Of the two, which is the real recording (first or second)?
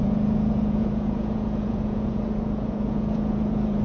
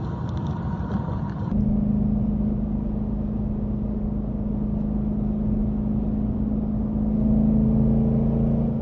second